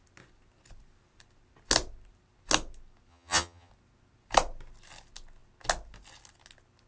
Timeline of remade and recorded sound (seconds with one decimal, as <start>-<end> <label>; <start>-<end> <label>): 0.0-3.1 recorded; 3.1-3.7 remade; 3.7-6.9 recorded